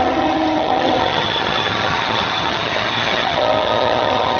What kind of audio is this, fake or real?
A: fake